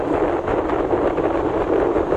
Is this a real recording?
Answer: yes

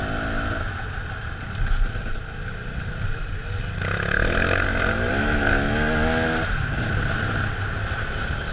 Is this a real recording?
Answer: yes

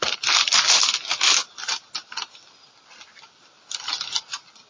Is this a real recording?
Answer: yes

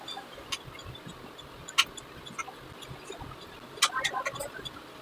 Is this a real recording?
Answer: yes